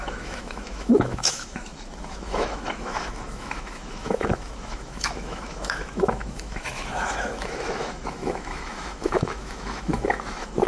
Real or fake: fake